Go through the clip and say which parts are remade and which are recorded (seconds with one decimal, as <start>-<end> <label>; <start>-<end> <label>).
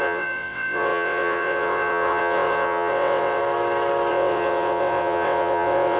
0.0-3.4 remade; 3.4-4.1 recorded; 4.1-6.0 remade